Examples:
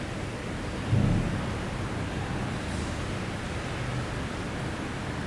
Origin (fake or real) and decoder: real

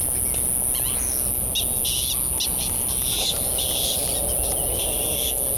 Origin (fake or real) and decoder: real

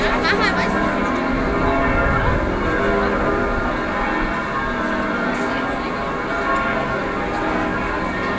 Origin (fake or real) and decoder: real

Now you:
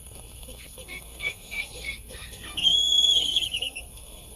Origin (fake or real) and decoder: fake, codec, SNAC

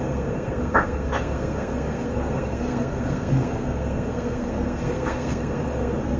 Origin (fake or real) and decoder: fake, codec, SNAC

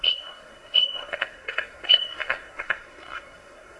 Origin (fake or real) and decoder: fake, codec, SNAC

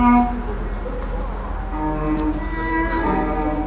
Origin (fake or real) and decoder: real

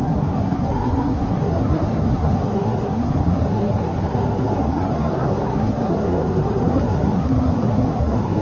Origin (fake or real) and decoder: fake, codec, SNAC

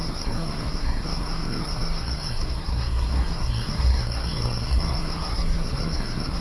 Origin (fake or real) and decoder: fake, codec, SNAC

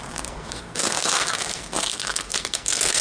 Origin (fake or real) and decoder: fake, codec, SNAC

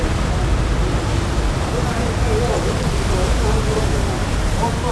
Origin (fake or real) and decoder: real